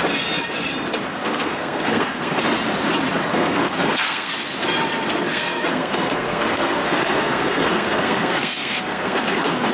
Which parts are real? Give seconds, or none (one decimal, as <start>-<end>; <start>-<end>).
0.0-1.1; 2.4-3.3; 4.3-5.3